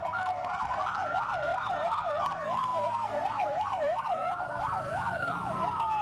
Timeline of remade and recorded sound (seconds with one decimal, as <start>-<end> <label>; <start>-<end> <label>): 0.0-6.0 remade